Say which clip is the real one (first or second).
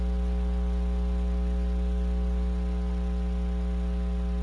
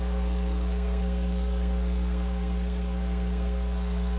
first